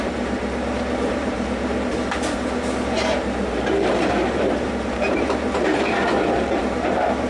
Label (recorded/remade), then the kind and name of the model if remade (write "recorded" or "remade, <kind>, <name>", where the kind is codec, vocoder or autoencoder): remade, vocoder, BigVGAN v2